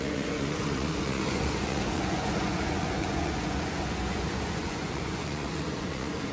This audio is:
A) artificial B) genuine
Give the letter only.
A